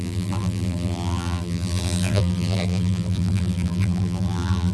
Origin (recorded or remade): remade